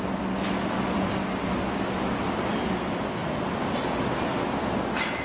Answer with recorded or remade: recorded